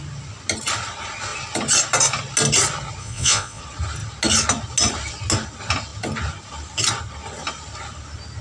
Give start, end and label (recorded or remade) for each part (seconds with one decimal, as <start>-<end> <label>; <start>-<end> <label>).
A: 0.0-3.0 recorded; 3.0-3.6 remade; 3.6-8.4 recorded